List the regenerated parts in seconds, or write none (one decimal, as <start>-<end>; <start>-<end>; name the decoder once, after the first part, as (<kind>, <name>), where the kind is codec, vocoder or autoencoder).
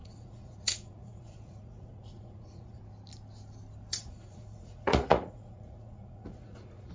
0.0-2.8 (vocoder, Vocos); 3.9-6.9